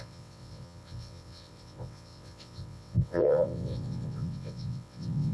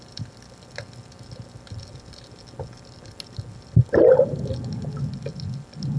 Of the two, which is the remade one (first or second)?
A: first